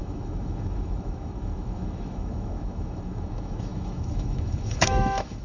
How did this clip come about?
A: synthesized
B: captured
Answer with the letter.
A